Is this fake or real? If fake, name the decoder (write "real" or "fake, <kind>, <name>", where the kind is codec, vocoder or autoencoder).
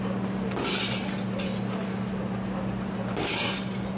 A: real